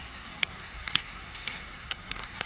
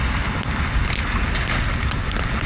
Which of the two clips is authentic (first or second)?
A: second